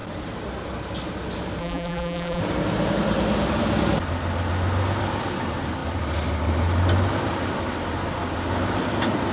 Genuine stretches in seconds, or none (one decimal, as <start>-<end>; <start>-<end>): 0.0-1.6; 2.4-9.3